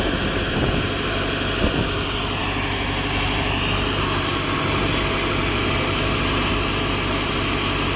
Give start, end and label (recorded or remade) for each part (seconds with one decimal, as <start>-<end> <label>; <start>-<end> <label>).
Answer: 0.0-8.0 recorded